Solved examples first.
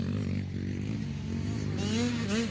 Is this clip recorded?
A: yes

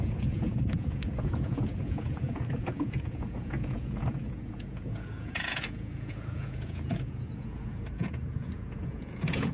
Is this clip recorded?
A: no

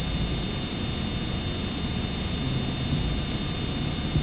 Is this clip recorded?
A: yes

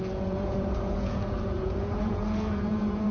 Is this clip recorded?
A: no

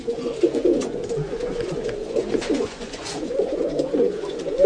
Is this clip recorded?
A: no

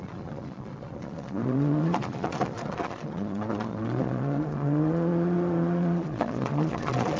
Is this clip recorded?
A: no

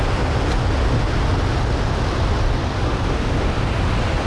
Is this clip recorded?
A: yes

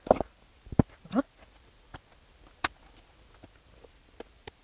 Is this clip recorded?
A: yes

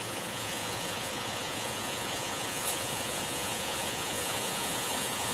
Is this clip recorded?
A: no